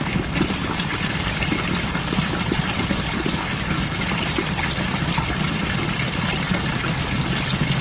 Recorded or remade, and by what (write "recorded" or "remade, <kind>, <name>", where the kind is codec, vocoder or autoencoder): remade, vocoder, BigVGAN v2